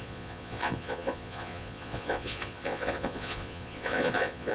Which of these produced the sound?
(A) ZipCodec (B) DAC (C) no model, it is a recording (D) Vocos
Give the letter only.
D